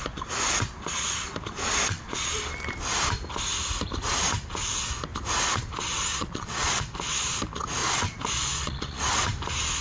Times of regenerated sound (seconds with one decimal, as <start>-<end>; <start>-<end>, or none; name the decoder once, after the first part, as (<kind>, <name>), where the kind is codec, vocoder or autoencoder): 1.6-2.3 (vocoder, Vocos); 6.1-6.8; 7.8-9.0